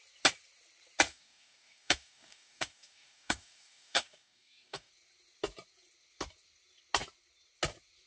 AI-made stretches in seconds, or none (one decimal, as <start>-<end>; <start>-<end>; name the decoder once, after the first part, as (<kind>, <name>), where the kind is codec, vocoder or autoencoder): 1.1-4.9 (codec, DAC)